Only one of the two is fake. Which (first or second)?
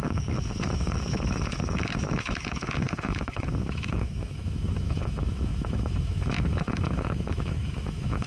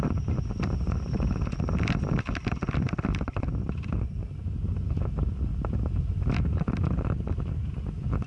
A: first